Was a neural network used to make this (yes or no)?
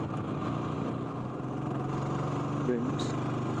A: no